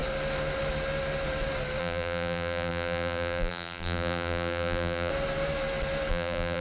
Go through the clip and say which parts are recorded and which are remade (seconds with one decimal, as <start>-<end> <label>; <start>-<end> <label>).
0.0-1.8 recorded; 1.8-5.1 remade; 5.1-6.1 recorded; 6.1-6.6 remade